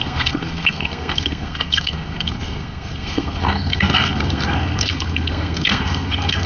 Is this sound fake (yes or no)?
yes